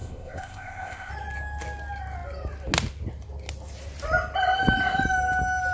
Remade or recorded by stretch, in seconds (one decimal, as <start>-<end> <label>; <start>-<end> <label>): 0.0-1.1 remade; 1.1-5.7 recorded